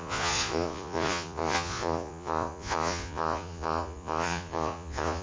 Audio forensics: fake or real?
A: fake